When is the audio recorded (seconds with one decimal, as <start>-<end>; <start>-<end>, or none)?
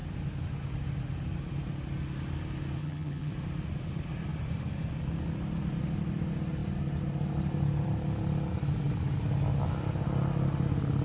0.0-2.8; 3.3-11.0